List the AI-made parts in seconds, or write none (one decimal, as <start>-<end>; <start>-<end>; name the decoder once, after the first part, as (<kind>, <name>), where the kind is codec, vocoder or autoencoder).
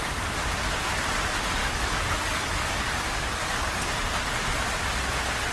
1.6-3.8 (codec, DAC)